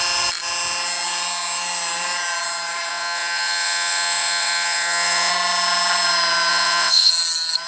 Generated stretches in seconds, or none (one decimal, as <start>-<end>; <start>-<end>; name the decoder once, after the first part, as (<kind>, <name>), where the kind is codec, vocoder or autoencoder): 2.9-5.3 (vocoder, WaveNeXt); 6.5-7.1